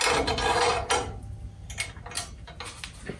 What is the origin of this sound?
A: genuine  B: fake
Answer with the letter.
A